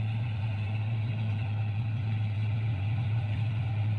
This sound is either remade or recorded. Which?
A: remade